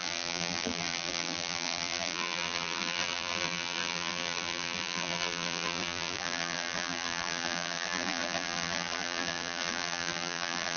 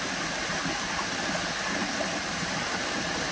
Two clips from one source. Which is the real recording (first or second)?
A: second